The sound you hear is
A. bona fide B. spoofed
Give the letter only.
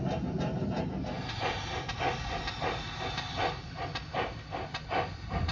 A